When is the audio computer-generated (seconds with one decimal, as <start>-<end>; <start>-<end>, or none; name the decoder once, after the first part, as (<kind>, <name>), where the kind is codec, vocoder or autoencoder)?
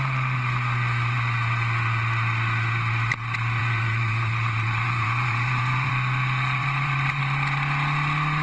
3.6-5.9 (vocoder, BigVGAN v2); 6.6-7.2